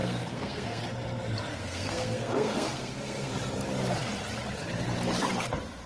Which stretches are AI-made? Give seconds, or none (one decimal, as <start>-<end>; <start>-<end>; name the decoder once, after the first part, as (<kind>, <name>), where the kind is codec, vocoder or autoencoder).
0.0-0.8 (codec, SNAC); 1.5-3.3